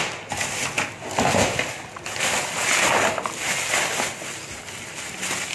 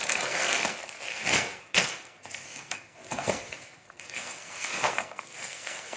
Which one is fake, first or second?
second